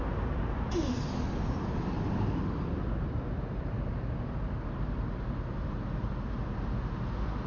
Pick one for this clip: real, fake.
real